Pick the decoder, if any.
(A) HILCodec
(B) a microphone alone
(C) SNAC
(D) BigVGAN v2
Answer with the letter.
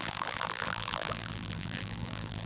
D